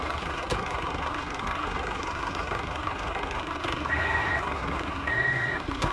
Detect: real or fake fake